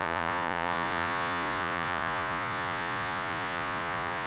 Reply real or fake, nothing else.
fake